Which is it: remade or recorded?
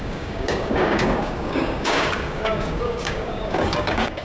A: remade